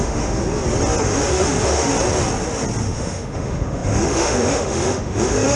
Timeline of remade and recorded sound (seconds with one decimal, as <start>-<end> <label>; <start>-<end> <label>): 0.0-0.4 remade; 0.4-1.0 recorded; 1.0-1.9 remade; 1.9-2.8 recorded; 2.8-5.6 remade